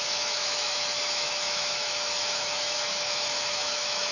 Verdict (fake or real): fake